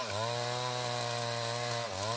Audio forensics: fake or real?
real